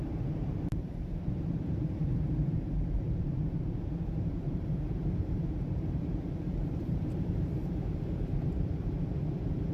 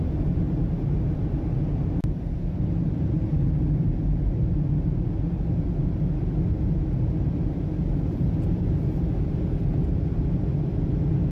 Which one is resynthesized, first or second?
first